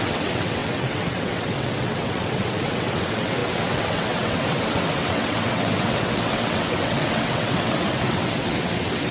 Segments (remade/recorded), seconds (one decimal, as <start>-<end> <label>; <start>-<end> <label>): 0.0-9.1 remade